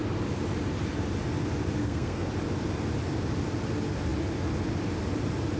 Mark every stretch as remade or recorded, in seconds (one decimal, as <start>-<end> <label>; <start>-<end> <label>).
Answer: 0.0-1.8 recorded; 1.8-2.3 remade; 2.3-5.6 recorded